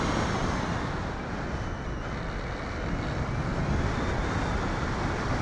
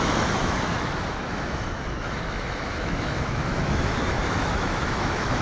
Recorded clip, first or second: first